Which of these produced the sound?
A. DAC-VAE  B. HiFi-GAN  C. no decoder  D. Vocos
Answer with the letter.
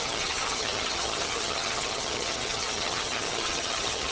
B